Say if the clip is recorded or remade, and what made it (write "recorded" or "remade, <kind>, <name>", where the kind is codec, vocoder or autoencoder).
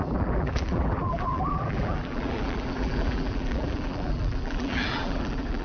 remade, vocoder, BigVGAN v2